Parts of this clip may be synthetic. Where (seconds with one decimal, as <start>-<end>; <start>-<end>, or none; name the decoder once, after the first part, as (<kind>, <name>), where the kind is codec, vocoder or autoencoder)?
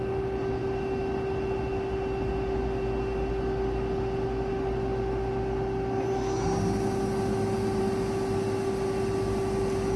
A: none